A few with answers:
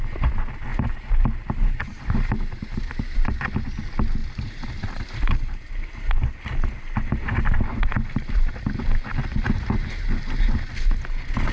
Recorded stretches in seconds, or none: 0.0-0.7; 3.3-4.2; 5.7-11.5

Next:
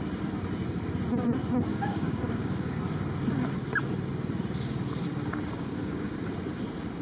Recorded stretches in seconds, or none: 0.0-1.7; 2.8-5.5; 6.1-7.0

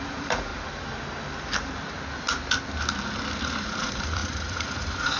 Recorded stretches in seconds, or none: 0.5-3.6

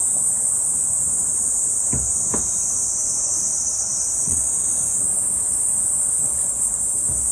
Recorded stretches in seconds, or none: 0.0-3.5; 4.4-6.2; 6.8-7.3

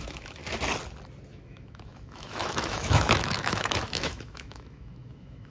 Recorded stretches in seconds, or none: 0.4-1.3